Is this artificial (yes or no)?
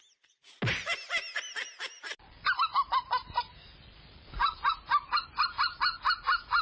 no